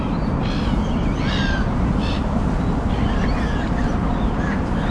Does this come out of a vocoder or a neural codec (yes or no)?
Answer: no